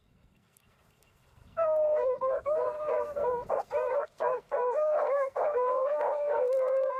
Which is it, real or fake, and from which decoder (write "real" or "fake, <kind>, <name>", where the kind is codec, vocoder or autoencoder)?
fake, codec, SNAC